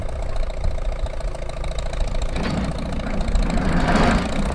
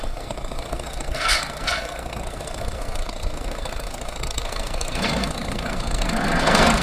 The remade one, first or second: second